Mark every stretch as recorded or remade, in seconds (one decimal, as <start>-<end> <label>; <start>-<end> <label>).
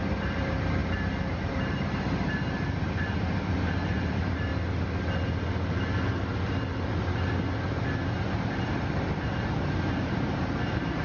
0.0-4.5 remade; 4.5-8.4 recorded; 8.4-11.0 remade